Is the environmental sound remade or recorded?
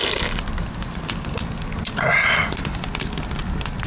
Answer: recorded